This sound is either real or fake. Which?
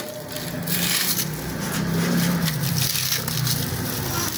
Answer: real